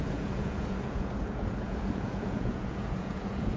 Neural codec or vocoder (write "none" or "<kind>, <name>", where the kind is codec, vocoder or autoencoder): vocoder, Vocos